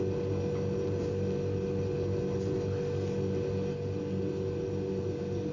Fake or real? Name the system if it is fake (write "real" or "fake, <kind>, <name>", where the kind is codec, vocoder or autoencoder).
real